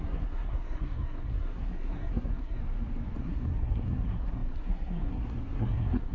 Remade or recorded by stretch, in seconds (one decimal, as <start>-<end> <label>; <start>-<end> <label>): 0.0-2.6 remade; 2.6-3.2 recorded; 3.2-6.1 remade